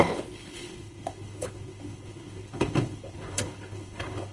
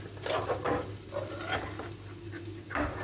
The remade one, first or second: first